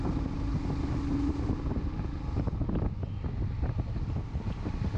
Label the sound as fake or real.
real